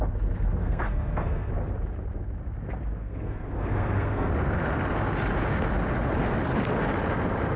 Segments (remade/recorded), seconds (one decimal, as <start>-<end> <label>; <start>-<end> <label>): 0.0-0.6 recorded; 0.6-1.5 remade; 1.5-3.0 recorded; 3.0-4.3 remade; 4.3-7.6 recorded